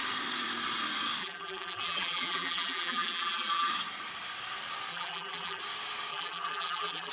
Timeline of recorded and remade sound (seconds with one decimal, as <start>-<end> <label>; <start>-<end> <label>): 0.0-1.2 recorded; 1.2-3.7 remade; 3.7-4.9 recorded; 4.9-5.6 remade; 5.6-6.1 recorded; 6.1-7.1 remade